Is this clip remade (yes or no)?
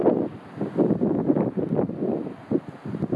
no